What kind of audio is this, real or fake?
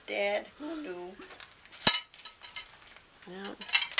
real